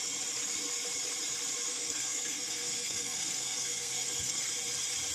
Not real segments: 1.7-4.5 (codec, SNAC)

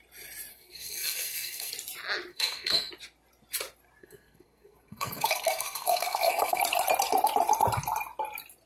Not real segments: 0.5-1.7 (codec, SNAC); 2.3-2.9; 4.0-6.6